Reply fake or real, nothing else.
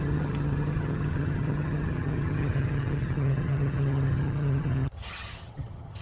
fake